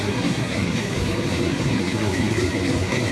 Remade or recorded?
remade